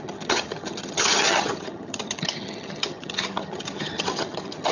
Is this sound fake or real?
fake